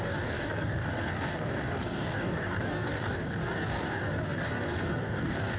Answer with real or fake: fake